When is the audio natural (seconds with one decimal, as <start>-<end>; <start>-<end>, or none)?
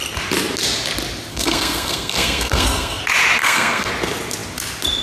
0.0-1.3; 3.0-3.4; 3.9-5.0